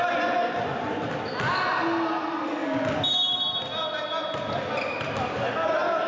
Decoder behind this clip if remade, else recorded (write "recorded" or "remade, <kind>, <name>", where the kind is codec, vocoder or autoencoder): recorded